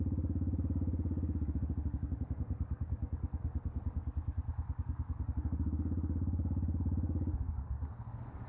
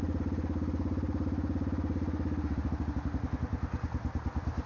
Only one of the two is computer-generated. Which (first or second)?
first